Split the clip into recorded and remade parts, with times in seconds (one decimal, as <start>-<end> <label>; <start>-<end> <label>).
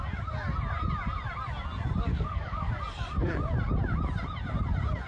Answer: 0.0-2.1 recorded; 2.1-2.7 remade; 2.7-5.1 recorded